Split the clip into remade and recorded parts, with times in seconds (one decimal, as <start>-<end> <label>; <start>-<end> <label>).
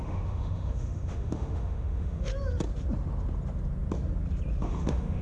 0.0-2.3 remade; 2.3-4.6 recorded; 4.6-5.2 remade